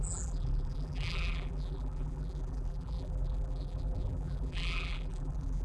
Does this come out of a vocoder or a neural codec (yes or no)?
yes